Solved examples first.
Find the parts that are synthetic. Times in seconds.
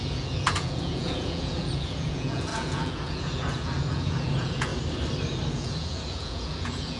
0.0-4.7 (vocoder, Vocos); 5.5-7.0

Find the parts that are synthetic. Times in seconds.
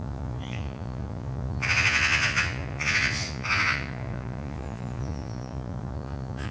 0.0-6.5 (vocoder, Vocos)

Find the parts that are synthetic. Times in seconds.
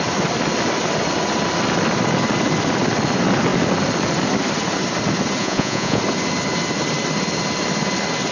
5.4-6.0 (vocoder, Vocos)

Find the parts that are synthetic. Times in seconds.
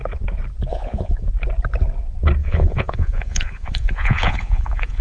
0.7-1.3 (vocoder, Vocos); 2.4-5.0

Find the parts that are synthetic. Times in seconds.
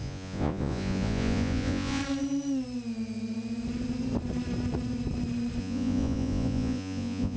0.0-2.0 (vocoder, Vocos); 5.6-7.4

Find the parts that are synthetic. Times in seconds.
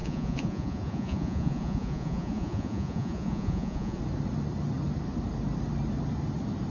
0.0-4.0 (vocoder, Vocos)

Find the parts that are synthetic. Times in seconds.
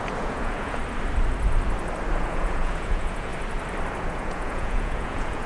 0.0-0.8 (vocoder, Vocos); 2.1-3.3; 4.0-5.5